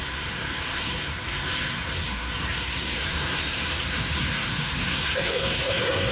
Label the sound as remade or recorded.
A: remade